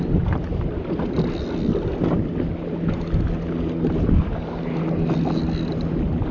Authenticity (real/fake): real